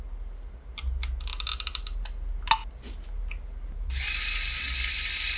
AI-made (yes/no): no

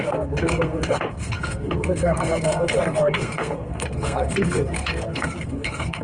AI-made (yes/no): yes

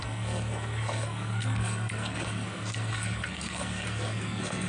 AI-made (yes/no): yes